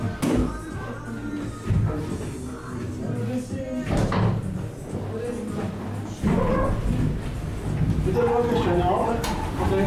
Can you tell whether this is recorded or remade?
recorded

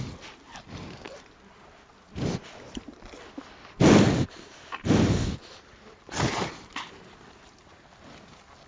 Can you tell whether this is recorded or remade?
recorded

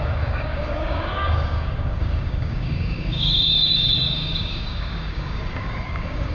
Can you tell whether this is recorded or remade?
remade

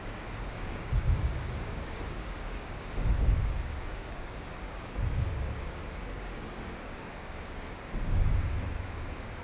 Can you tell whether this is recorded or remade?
remade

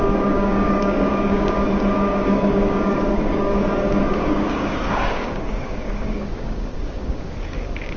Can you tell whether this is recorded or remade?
remade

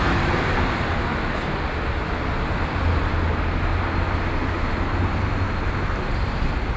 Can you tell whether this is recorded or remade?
recorded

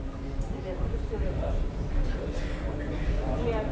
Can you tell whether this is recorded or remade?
recorded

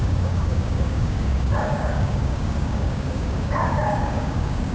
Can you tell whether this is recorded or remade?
remade